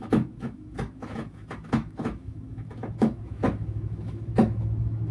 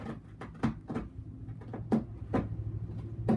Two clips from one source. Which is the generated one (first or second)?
first